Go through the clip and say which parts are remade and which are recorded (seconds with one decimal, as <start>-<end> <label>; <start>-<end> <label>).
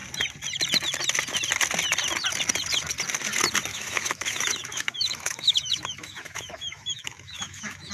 0.0-3.7 recorded; 3.7-7.9 remade